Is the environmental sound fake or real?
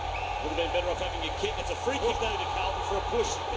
real